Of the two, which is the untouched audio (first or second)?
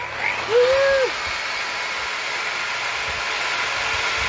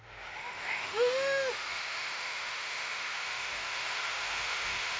first